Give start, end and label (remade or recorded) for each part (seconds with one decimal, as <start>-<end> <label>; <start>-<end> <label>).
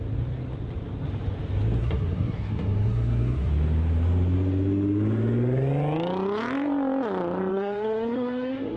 0.0-1.8 recorded; 1.8-3.5 remade; 3.5-7.5 recorded; 7.5-8.8 remade